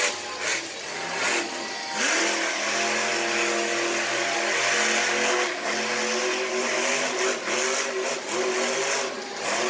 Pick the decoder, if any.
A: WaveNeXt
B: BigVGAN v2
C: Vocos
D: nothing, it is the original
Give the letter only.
D